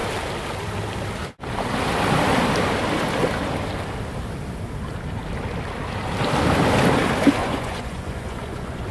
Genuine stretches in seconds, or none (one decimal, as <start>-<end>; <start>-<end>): 0.0-7.4